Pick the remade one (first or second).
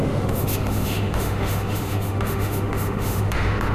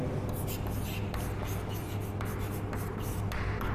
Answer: first